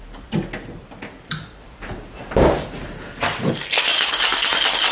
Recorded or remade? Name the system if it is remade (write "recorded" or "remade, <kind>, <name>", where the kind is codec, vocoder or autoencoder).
recorded